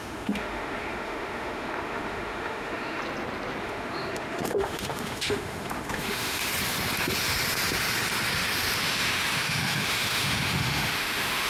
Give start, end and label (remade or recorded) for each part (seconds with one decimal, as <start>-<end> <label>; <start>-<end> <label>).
0.0-3.0 remade; 3.0-3.6 recorded; 3.6-6.5 remade; 6.5-8.8 recorded; 8.8-11.5 remade